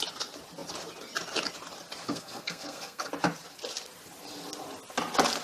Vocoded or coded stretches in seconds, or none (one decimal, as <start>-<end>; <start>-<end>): 2.0-3.1

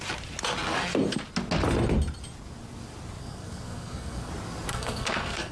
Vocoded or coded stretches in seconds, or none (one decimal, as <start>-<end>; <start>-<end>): 3.2-4.3; 4.7-5.5

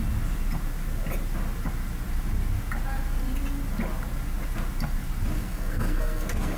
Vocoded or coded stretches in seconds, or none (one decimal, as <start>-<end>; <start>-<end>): 5.4-6.6

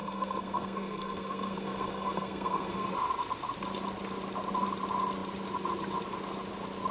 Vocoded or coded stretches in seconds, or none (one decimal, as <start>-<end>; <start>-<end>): 0.0-2.9

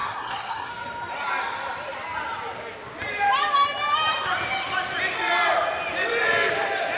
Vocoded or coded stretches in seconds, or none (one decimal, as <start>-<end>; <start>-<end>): 0.0-0.7

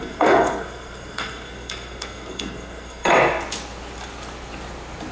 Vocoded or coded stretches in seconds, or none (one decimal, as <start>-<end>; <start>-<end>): 0.0-3.1

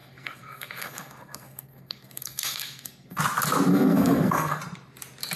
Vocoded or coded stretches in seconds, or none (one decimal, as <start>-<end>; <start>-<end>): 0.0-3.2; 3.7-4.6

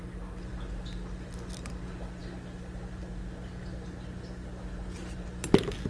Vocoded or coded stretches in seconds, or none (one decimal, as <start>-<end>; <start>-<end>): none